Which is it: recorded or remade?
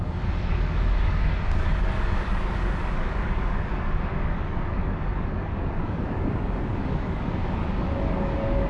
remade